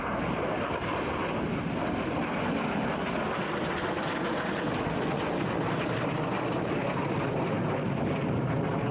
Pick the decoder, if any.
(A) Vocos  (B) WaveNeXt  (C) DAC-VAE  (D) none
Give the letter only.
D